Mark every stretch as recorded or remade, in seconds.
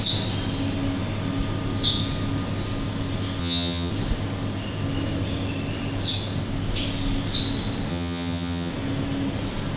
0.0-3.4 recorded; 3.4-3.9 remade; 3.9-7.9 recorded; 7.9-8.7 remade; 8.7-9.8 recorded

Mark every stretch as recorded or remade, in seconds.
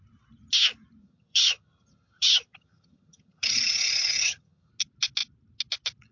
0.0-1.0 recorded; 1.0-4.7 remade; 4.7-6.1 recorded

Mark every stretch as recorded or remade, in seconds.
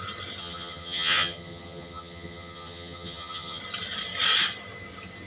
0.0-0.4 recorded; 0.4-3.6 remade; 3.6-5.3 recorded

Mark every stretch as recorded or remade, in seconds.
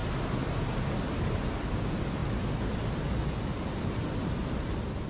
0.0-5.1 recorded